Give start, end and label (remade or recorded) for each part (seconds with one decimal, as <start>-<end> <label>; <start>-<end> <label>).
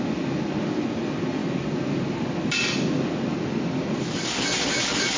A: 0.0-5.2 recorded